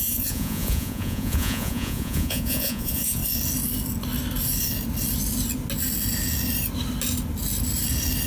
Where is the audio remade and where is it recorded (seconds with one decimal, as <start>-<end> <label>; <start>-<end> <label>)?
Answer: 0.0-3.2 remade; 3.2-8.3 recorded